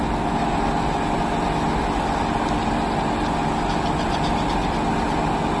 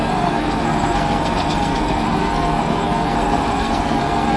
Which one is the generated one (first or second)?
second